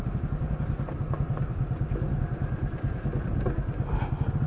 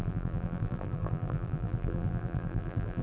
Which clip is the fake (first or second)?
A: second